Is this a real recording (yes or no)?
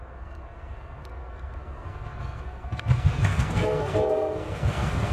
no